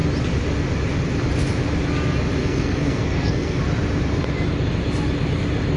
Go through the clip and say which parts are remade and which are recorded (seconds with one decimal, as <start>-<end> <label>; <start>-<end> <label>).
0.0-2.4 recorded; 2.4-3.6 remade; 3.6-5.8 recorded